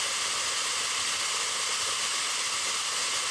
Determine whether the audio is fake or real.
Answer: real